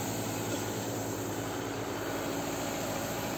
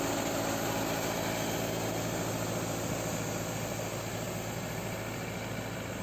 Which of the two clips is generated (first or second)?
first